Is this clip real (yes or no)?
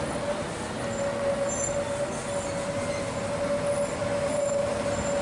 yes